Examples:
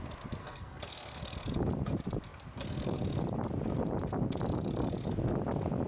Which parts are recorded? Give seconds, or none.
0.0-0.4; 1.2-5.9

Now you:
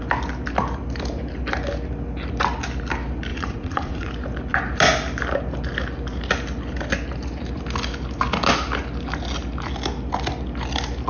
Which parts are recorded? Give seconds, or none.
0.0-3.3; 4.1-11.1

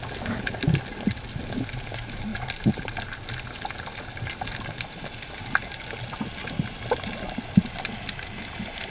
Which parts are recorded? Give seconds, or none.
0.0-8.9

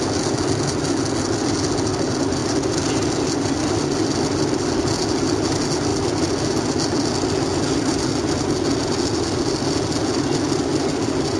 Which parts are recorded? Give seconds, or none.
0.0-7.5; 8.1-11.4

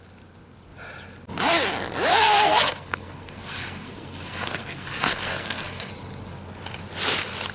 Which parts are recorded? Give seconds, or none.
0.0-2.1; 5.9-7.5